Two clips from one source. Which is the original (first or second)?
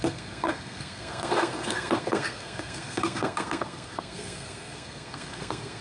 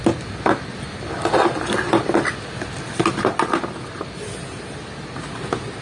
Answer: second